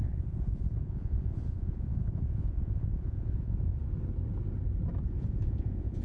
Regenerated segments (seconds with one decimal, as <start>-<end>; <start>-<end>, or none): 0.0-3.8; 5.2-6.0